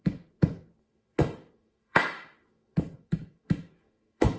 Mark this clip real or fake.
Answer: fake